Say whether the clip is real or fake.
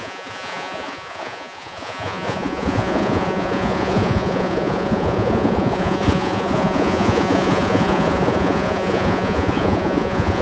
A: fake